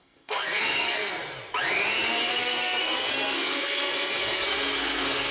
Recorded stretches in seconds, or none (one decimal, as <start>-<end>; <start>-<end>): 1.1-2.3